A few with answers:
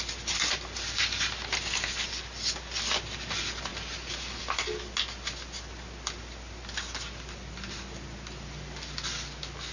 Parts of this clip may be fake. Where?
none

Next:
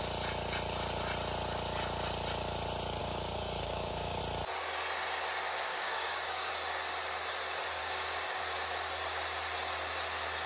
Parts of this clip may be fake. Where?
3.0-4.2 (codec, DAC); 5.7-6.5; 7.8-8.4